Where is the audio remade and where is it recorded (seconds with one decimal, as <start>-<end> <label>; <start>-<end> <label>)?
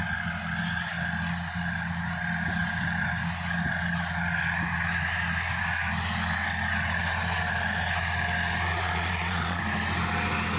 0.0-8.7 recorded; 8.7-9.6 remade; 9.6-10.6 recorded